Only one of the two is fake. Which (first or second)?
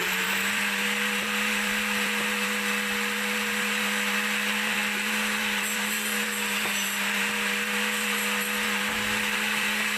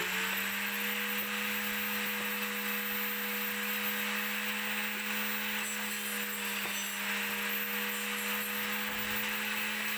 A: first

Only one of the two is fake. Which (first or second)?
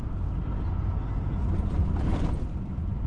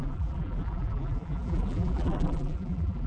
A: second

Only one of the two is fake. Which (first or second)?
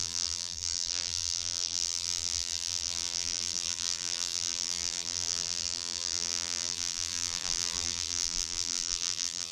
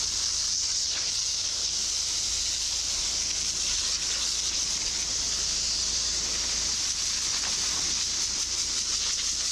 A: first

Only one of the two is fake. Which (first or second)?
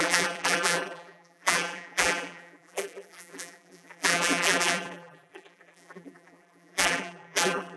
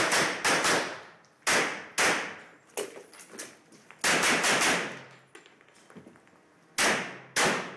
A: first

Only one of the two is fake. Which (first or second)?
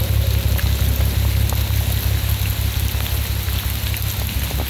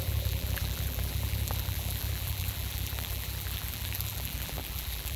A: second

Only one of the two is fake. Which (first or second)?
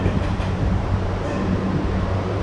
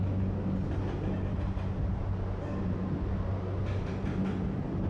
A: first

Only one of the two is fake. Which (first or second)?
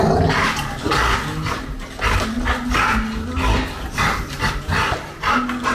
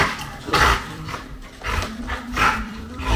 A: second